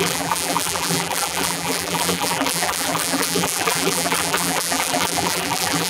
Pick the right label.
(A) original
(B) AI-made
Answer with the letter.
B